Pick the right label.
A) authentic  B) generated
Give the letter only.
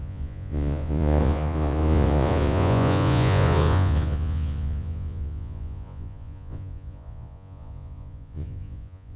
B